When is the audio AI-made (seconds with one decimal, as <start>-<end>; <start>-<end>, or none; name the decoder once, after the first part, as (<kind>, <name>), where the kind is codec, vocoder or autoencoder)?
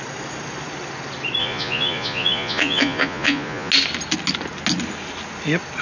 1.4-3.7 (vocoder, Vocos)